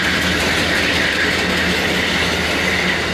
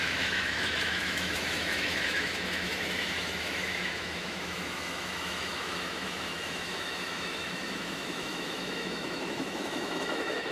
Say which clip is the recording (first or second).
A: first